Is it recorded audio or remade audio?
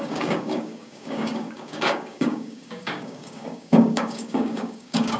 remade